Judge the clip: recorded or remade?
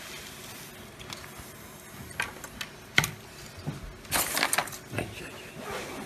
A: recorded